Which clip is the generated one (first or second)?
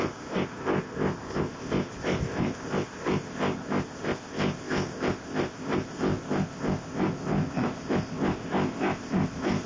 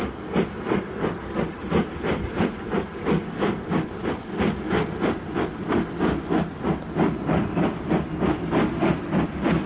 first